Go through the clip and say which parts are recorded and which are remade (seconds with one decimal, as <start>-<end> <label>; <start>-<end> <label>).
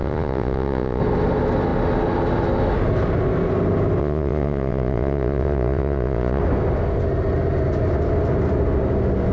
0.0-1.0 remade; 1.0-4.0 recorded; 4.0-6.4 remade; 6.4-9.3 recorded